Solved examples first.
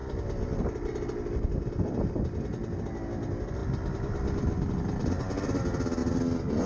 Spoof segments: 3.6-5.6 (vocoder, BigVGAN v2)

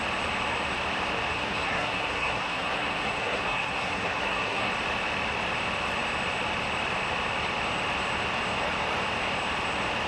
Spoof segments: 1.3-4.7 (codec, SNAC)

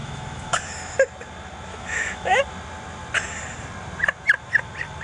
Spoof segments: 0.0-0.6 (autoencoder, DAC-VAE); 1.7-2.4

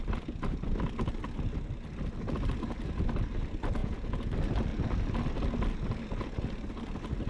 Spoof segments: 3.8-4.3 (vocoder, Vocos)

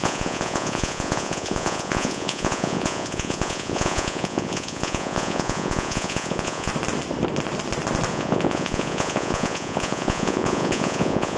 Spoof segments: 0.0-6.7 (vocoder, Vocos); 8.1-11.4

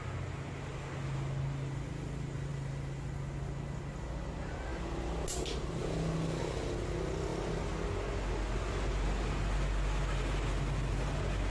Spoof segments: none

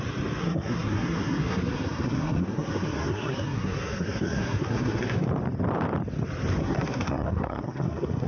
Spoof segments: 0.4-5.3 (codec, SNAC); 6.6-8.3